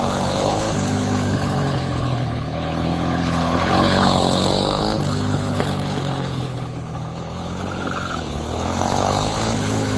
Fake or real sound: fake